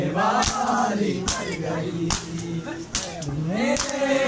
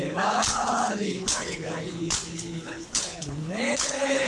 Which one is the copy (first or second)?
second